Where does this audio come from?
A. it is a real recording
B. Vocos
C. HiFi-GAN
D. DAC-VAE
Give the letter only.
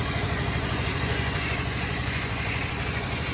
B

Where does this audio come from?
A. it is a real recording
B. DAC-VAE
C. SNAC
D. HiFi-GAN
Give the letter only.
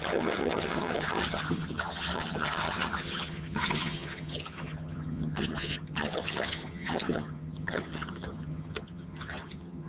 D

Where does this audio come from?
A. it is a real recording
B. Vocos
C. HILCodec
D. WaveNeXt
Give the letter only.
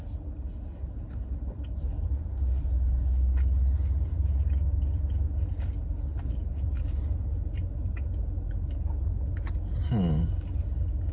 A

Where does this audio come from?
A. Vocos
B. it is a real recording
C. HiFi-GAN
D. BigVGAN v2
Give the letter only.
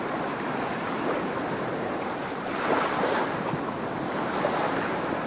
D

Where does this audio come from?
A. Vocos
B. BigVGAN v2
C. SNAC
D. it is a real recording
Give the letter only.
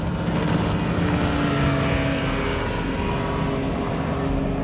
D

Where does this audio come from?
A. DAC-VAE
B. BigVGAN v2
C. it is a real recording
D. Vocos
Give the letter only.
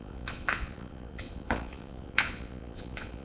D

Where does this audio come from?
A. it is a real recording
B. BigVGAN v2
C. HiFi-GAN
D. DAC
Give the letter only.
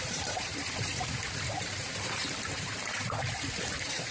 B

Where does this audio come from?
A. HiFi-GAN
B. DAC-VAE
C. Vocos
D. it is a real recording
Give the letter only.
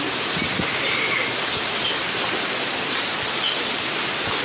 D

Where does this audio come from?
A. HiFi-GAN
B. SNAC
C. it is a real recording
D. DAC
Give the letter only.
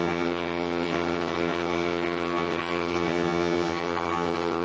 A